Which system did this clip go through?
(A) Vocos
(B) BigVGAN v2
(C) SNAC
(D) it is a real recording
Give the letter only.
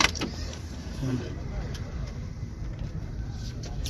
B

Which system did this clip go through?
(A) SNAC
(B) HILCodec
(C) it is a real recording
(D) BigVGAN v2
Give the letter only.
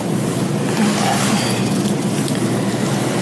C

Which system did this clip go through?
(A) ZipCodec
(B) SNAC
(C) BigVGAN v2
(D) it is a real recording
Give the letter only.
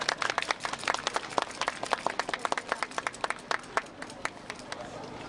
D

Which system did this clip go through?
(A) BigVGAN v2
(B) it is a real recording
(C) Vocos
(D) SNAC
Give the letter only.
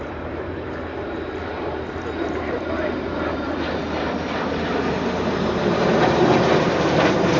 A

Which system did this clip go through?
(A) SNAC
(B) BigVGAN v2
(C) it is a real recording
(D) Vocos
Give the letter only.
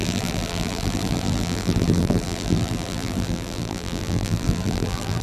B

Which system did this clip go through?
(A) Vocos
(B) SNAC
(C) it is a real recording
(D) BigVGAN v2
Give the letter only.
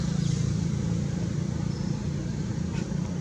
D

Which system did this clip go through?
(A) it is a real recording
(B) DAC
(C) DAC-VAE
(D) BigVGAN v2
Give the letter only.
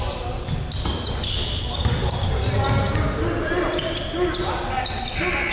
A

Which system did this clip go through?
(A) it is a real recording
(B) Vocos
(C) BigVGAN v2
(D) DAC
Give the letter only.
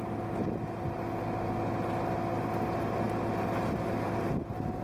A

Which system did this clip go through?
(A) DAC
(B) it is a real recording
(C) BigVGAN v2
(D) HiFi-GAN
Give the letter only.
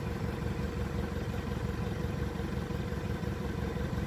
C